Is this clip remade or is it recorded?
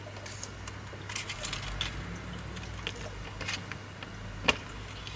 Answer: recorded